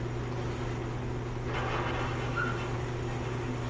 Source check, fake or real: real